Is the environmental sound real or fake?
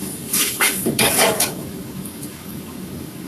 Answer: fake